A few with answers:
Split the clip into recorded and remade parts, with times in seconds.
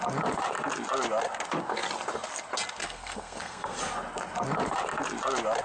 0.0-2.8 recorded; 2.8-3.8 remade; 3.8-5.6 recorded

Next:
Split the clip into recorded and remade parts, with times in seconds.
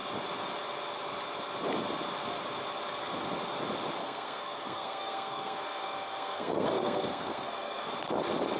0.0-4.0 recorded; 4.0-7.9 remade; 7.9-8.6 recorded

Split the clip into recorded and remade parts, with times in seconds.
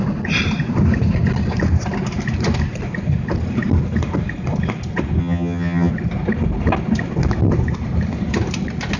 0.0-5.2 recorded; 5.2-5.9 remade; 5.9-9.0 recorded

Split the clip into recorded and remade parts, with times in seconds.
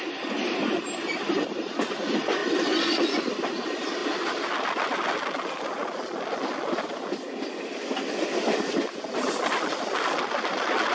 0.0-10.9 recorded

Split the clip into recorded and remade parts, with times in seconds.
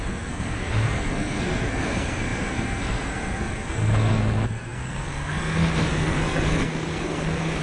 0.0-7.6 remade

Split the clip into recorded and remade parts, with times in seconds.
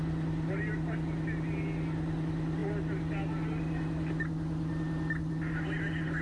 0.0-6.2 recorded